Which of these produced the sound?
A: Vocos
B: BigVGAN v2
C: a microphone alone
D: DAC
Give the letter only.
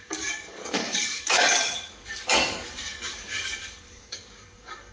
D